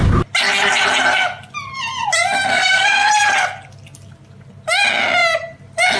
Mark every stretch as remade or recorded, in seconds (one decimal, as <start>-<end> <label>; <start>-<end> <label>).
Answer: 0.0-2.5 recorded; 2.5-3.1 remade; 3.1-6.0 recorded